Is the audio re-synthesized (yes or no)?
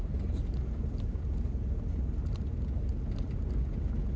no